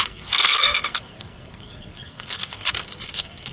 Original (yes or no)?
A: no